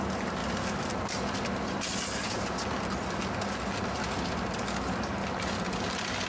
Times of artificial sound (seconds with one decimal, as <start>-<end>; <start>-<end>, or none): none

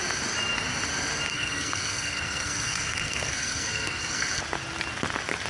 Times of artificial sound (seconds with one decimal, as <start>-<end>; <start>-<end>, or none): 1.3-4.4

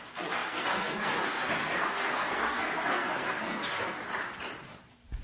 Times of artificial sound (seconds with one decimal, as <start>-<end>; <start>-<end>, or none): 0.0-4.0

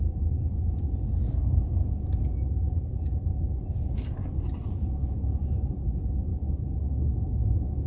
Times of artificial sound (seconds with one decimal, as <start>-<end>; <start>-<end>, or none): none

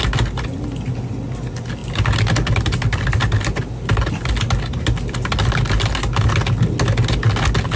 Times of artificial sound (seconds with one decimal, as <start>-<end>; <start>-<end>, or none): none

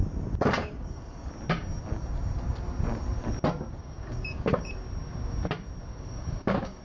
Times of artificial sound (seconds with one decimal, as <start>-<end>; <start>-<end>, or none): 0.6-1.3; 3.8-4.7; 5.9-6.8